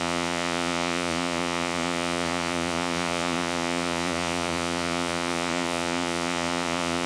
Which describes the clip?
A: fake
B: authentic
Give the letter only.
A